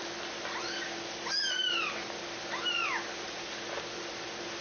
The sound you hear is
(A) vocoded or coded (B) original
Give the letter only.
B